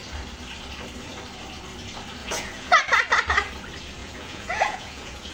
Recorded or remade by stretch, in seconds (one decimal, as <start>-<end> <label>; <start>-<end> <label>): 0.0-2.2 recorded; 2.2-2.8 remade; 2.8-4.0 recorded; 4.0-5.3 remade